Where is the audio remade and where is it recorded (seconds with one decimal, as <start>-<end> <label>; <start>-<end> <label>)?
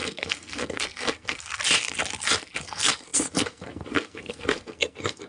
0.0-1.6 remade; 1.6-2.6 recorded; 2.6-5.3 remade